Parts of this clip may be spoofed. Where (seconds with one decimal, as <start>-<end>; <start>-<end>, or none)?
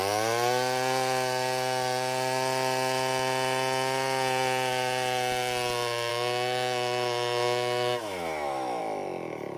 6.1-8.8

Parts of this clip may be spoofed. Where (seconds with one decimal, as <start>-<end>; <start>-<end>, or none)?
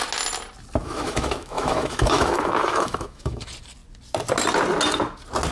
0.8-3.4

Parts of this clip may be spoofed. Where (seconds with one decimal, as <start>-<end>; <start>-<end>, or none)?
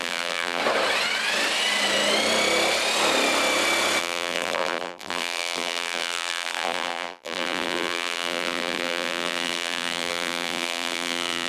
0.0-0.6; 4.0-11.5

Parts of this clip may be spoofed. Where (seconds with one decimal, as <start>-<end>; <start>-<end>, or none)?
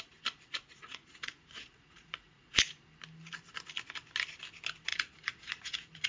0.5-2.5; 4.9-6.1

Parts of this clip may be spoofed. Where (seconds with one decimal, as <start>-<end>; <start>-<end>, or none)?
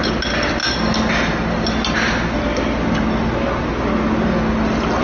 none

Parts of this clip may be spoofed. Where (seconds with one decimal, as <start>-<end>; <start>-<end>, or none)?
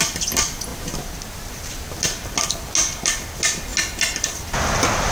none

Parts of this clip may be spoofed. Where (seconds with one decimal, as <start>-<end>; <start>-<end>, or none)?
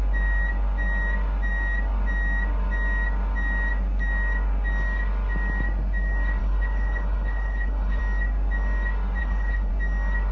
6.4-8.0; 9.2-9.7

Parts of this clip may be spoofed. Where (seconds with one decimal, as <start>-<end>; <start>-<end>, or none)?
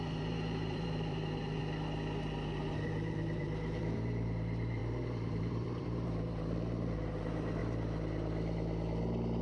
0.0-1.6; 2.5-7.6